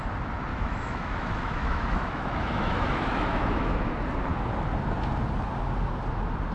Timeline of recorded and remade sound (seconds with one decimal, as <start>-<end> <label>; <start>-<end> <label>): 0.0-0.5 recorded; 0.5-3.9 remade; 3.9-6.5 recorded